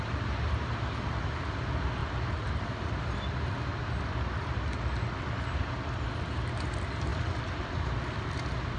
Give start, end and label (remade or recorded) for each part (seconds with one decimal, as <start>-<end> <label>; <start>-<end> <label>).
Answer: 0.0-8.8 recorded